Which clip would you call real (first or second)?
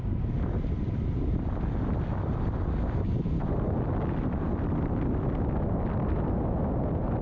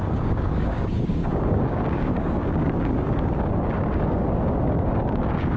first